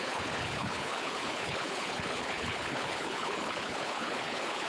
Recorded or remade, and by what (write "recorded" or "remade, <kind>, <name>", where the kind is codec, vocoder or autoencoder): remade, codec, HILCodec